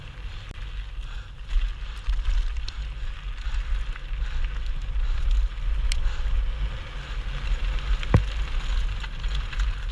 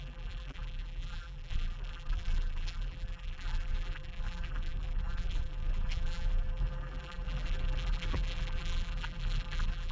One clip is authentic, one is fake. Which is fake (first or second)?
second